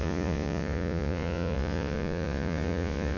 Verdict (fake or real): fake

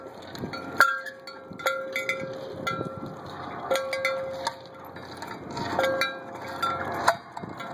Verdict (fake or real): real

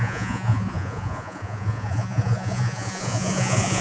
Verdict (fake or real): fake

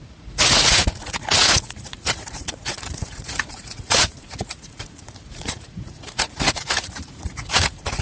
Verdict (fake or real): fake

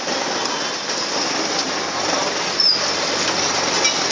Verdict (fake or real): real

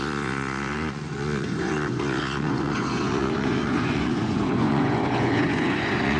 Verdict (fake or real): fake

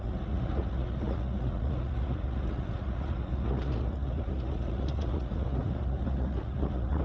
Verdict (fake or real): fake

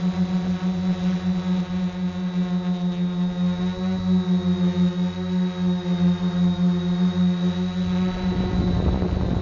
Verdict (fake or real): real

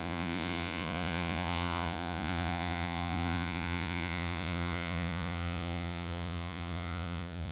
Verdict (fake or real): fake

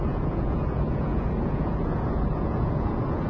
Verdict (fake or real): fake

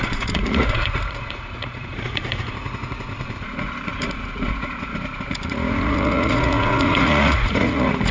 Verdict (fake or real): fake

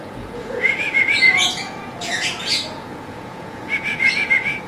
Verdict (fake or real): fake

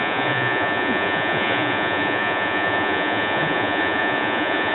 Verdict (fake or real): fake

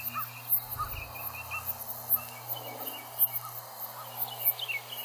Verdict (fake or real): real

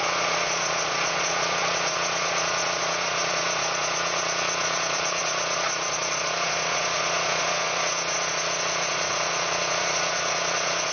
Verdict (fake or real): fake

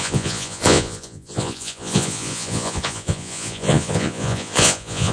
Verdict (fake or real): fake